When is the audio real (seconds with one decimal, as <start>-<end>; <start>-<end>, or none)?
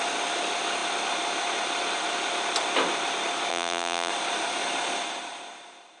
0.0-3.5; 4.1-6.0